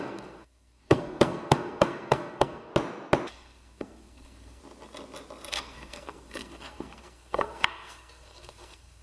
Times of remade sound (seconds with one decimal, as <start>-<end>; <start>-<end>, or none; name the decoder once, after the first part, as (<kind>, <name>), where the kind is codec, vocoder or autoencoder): 0.0-2.7 (codec, SNAC); 3.3-4.6; 5.5-9.0